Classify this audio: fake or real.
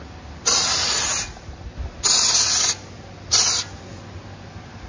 real